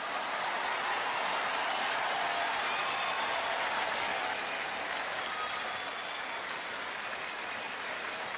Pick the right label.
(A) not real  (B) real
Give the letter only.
B